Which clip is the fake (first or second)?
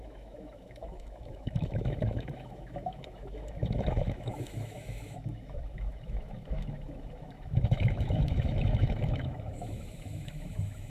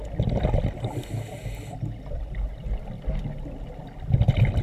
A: first